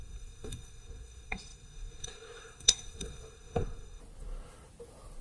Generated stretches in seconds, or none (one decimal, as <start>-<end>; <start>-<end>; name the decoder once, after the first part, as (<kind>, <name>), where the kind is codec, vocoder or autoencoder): 0.0-4.0 (codec, SNAC)